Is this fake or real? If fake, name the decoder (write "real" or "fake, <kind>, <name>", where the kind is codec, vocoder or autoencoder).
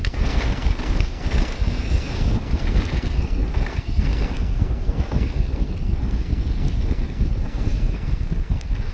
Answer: fake, codec, SNAC